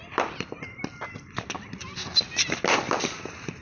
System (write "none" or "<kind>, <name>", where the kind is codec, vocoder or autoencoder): none